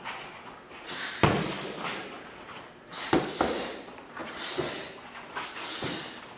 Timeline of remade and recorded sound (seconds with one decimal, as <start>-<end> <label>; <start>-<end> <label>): 0.0-6.4 recorded